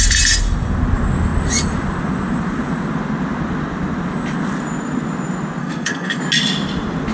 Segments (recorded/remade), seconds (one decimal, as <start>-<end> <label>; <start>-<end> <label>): 0.0-5.6 recorded; 5.6-6.2 remade; 6.2-7.1 recorded